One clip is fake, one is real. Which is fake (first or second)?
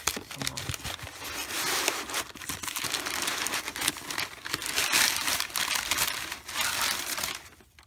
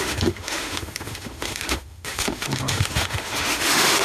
second